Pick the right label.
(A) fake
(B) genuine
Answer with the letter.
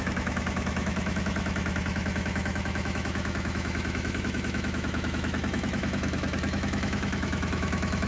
A